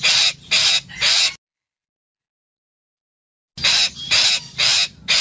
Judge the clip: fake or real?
real